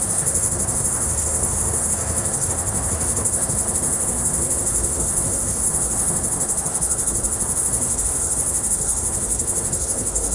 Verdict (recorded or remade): remade